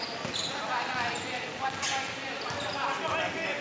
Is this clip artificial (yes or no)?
no